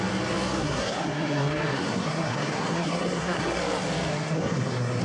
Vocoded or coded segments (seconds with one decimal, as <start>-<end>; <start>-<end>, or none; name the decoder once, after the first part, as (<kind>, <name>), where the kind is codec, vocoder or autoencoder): 0.6-3.6 (codec, SNAC); 4.1-5.0